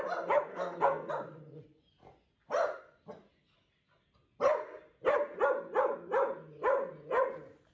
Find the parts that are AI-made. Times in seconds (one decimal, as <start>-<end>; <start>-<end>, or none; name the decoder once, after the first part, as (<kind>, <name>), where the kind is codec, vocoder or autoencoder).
0.5-1.1 (codec, SNAC)